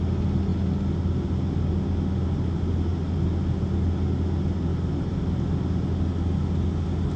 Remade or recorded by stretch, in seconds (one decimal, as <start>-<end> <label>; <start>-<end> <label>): 0.0-7.2 recorded

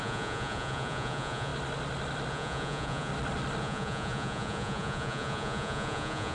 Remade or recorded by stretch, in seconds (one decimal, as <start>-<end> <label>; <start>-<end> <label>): 0.0-1.5 remade; 1.5-2.3 recorded; 2.3-3.1 remade; 3.1-3.6 recorded; 3.6-6.3 remade

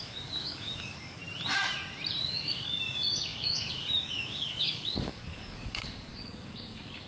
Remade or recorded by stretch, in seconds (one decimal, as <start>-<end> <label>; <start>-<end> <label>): 0.0-1.2 remade; 1.2-2.2 recorded; 2.2-7.1 remade

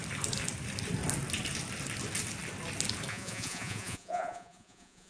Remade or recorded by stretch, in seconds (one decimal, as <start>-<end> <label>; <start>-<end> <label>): 0.0-3.1 recorded; 3.1-5.1 remade

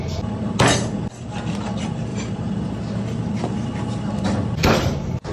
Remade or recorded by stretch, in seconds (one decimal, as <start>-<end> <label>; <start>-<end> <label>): 0.0-2.1 recorded; 2.1-2.7 remade; 2.7-5.3 recorded

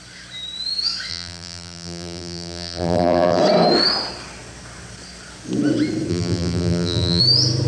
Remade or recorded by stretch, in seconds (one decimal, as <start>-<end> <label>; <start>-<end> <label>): 0.0-1.1 recorded; 1.1-3.4 remade; 3.4-6.1 recorded; 6.1-7.2 remade; 7.2-7.7 recorded